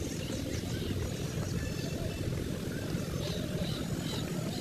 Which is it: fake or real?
real